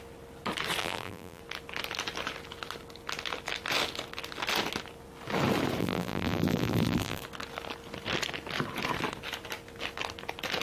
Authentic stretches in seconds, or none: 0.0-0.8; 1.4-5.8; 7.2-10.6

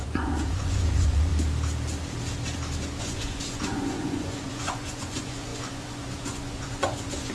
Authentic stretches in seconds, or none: 1.3-3.0

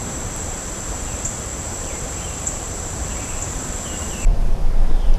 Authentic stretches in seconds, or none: none

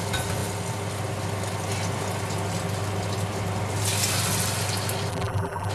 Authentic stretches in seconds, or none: 0.0-5.1

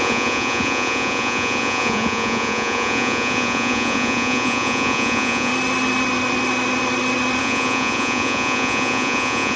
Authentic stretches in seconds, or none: 5.5-7.4

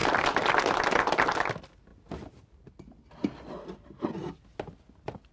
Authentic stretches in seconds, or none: 0.0-5.3